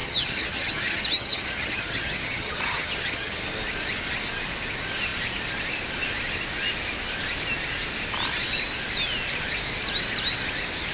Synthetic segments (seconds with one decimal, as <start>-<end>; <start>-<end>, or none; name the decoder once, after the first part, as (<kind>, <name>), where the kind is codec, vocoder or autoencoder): 0.0-3.4 (vocoder, HiFi-GAN)